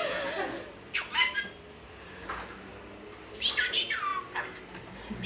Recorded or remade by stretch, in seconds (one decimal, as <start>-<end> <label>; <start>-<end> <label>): 0.0-1.7 recorded; 1.7-2.7 remade; 2.7-3.3 recorded; 3.3-4.1 remade; 4.1-5.3 recorded